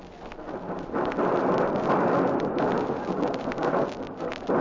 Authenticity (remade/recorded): recorded